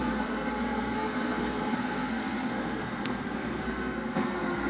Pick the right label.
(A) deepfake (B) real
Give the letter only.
A